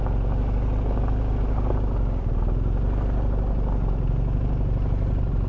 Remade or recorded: recorded